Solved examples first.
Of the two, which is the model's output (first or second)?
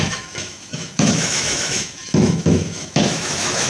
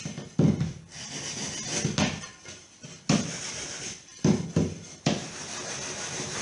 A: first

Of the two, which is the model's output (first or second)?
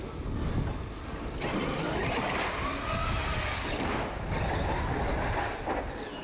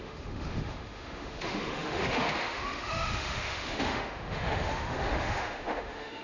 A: second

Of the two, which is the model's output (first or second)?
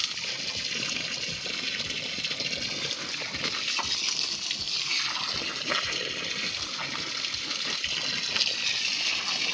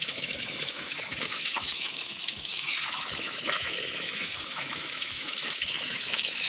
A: second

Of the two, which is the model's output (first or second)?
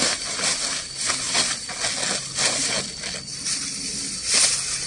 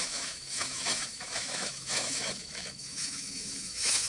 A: second